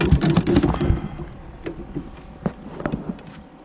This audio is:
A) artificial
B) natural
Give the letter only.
B